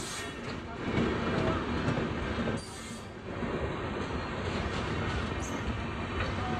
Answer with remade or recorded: recorded